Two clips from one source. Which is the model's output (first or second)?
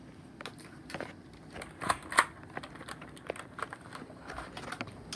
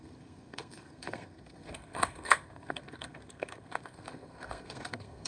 second